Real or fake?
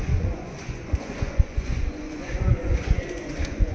fake